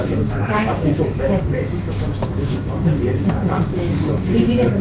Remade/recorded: remade